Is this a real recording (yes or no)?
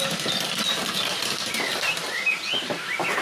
yes